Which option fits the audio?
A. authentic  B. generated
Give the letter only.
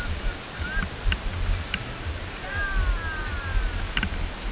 A